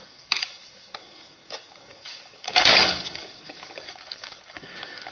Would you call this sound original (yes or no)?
no